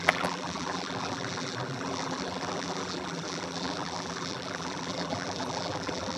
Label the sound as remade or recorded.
remade